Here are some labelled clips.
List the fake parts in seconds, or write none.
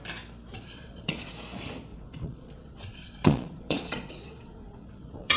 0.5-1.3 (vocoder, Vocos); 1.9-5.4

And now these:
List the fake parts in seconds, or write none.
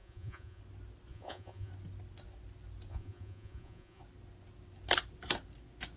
0.0-0.6 (vocoder, Vocos); 1.1-1.7; 2.9-4.0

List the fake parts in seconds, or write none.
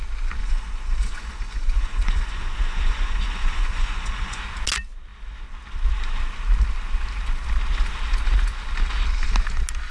0.4-4.4 (vocoder, Vocos)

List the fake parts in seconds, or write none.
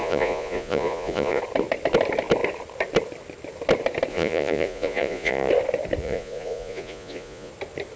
0.0-1.4 (vocoder, Vocos); 4.1-5.5; 6.0-7.5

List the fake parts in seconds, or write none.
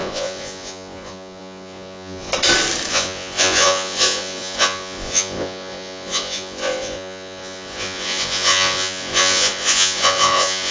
0.0-2.3 (vocoder, Vocos); 2.9-10.7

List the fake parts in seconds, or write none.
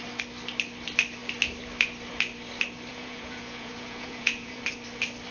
2.9-4.6 (vocoder, Vocos)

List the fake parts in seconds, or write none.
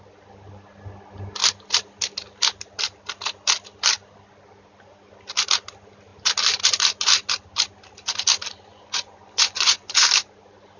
8.7-10.0 (vocoder, Vocos)